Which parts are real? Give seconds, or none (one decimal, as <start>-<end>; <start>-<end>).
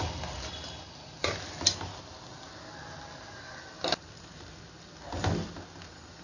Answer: 0.0-6.2